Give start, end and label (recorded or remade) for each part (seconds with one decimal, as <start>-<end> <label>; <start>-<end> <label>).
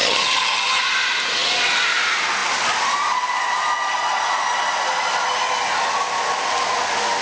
0.0-0.8 remade; 0.8-7.2 recorded